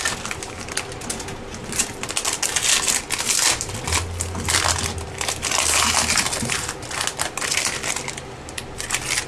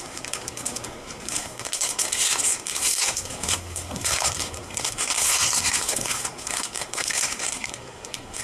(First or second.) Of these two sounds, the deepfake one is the second